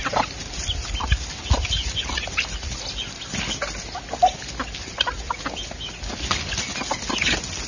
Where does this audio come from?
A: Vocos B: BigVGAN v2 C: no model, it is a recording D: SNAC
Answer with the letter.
C